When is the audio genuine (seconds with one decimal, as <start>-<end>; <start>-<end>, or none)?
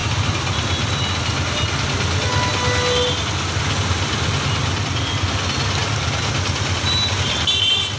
0.0-8.0